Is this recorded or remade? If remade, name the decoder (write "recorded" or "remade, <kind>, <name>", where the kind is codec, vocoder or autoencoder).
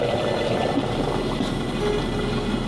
recorded